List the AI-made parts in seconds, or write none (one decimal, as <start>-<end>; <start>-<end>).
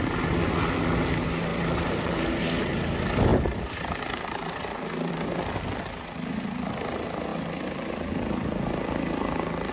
1.5-2.2; 3.3-5.1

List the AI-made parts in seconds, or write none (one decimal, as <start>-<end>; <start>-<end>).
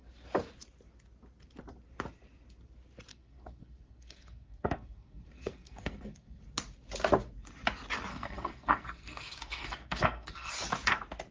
3.1-6.4; 8.1-10.5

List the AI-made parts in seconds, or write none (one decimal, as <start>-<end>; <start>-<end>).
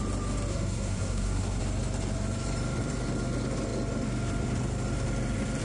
0.5-1.6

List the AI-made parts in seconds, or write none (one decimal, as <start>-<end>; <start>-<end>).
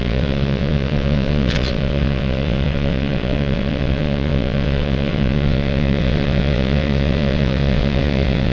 0.0-8.5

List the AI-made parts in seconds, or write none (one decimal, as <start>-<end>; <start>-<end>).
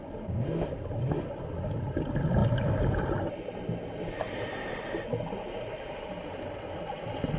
none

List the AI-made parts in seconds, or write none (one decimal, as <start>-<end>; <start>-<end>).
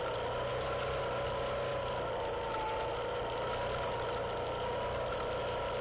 none